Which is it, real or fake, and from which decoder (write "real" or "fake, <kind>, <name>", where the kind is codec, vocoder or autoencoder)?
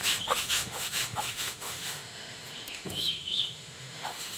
fake, autoencoder, DAC-VAE